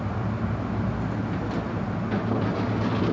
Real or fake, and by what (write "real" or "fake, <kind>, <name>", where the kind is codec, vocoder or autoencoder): real